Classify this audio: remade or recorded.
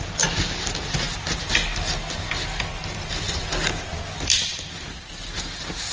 recorded